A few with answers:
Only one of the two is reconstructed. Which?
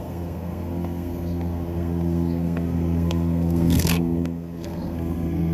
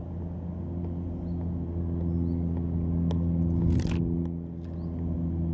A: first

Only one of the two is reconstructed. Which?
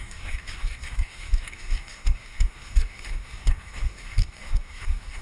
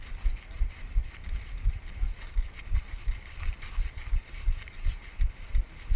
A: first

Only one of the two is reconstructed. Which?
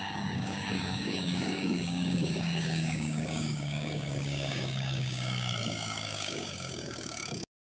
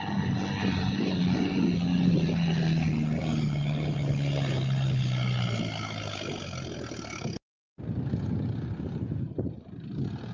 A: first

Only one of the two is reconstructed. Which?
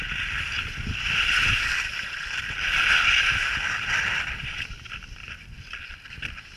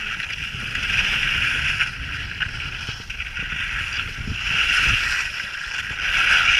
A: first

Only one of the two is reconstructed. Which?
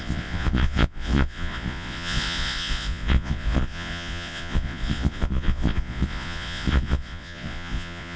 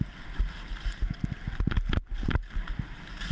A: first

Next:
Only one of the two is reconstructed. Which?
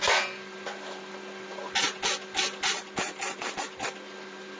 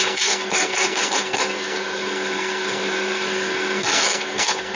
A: second